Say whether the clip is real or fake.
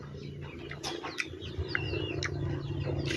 real